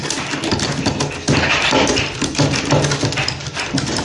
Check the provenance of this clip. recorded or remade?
recorded